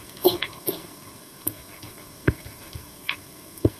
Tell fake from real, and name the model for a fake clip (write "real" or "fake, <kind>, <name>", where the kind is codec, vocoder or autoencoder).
fake, codec, SNAC